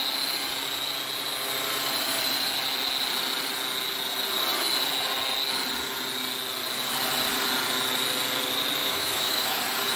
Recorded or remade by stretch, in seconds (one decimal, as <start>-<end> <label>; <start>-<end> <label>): 0.0-8.8 recorded; 8.8-9.6 remade; 9.6-10.0 recorded